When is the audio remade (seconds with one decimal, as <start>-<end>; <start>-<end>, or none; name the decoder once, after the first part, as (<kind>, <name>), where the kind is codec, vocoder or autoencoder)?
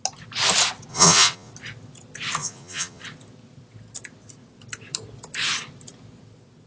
0.9-1.5 (vocoder, Vocos); 2.4-3.0